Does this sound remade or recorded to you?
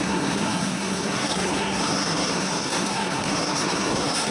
remade